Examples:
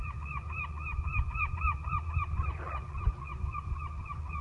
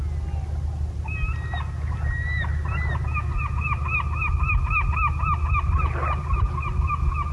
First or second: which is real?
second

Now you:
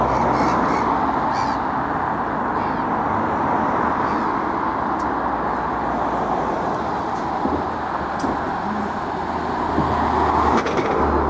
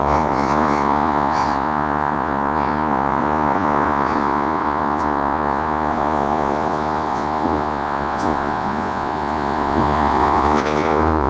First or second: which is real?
first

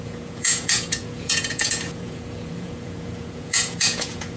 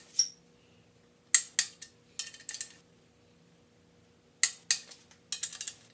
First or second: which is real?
second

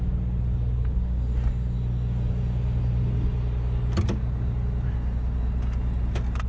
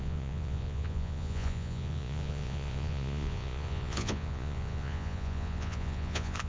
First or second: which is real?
first